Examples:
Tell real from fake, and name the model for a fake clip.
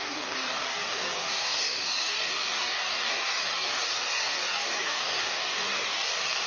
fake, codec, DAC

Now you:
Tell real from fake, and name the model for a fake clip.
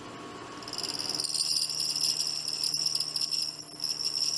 real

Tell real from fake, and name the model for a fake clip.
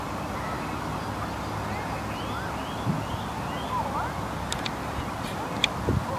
real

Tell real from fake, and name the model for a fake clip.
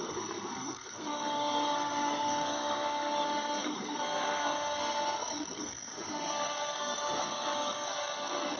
fake, codec, SNAC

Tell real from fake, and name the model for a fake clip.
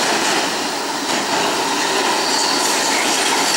real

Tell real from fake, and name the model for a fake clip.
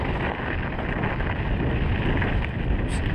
real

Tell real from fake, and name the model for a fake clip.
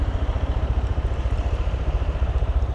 fake, vocoder, BigVGAN v2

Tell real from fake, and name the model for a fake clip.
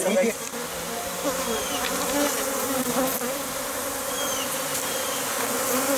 real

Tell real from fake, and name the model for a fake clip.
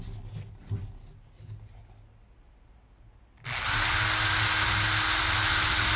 real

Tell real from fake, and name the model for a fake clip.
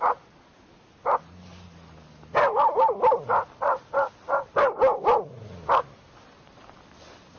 real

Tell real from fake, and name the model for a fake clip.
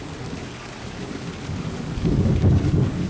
fake, codec, DAC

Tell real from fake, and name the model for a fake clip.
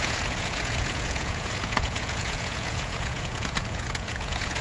fake, vocoder, Vocos